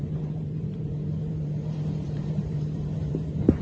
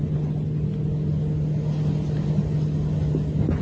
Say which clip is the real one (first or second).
second